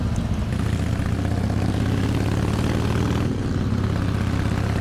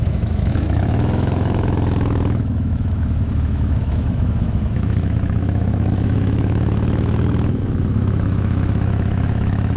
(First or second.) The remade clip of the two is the second